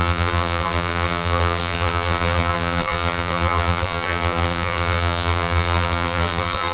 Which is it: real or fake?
fake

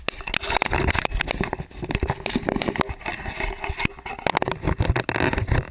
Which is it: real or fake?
real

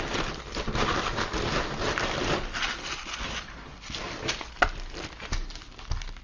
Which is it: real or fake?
real